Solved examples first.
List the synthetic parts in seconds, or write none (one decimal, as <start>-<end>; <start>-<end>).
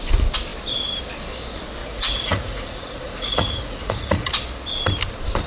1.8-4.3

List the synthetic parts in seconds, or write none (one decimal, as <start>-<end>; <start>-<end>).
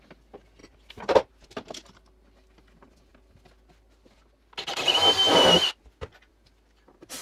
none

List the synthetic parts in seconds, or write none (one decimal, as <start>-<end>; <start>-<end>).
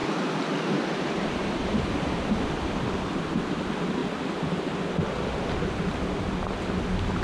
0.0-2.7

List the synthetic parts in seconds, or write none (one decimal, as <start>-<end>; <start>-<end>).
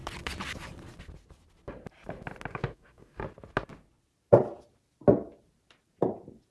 2.5-3.2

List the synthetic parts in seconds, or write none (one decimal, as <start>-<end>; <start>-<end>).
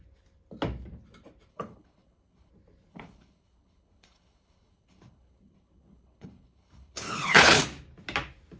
1.5-2.5; 2.9-7.6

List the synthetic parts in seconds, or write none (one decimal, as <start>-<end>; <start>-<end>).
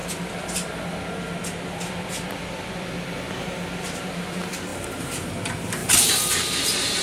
3.8-7.0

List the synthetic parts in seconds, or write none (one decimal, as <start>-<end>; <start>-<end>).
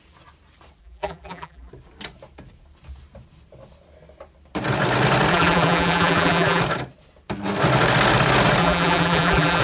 0.8-1.7; 5.3-6.6; 8.6-9.6